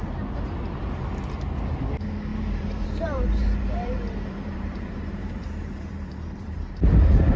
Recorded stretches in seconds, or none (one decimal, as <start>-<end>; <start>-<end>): 0.0-2.3; 6.7-7.4